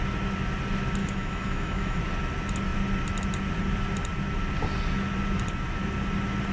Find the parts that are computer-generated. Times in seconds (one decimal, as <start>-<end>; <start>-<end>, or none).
1.0-2.0